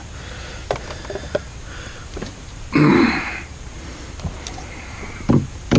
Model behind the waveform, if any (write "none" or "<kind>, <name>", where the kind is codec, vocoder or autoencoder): vocoder, BigVGAN v2